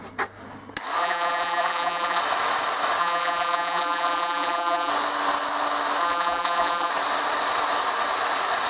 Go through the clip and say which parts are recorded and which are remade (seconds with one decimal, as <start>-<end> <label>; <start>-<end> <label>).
0.0-1.0 recorded; 1.0-2.2 remade; 2.2-3.0 recorded; 3.0-4.9 remade; 4.9-6.0 recorded; 6.0-6.9 remade; 6.9-8.7 recorded